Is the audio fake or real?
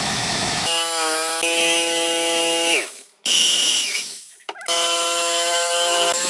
fake